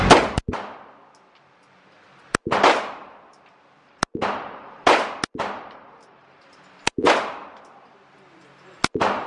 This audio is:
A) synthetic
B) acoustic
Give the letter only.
B